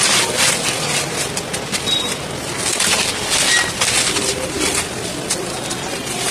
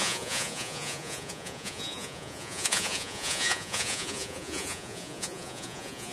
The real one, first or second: first